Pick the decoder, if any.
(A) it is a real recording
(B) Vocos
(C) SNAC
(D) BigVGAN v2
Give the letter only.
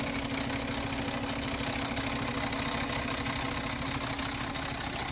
A